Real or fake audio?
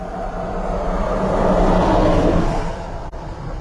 real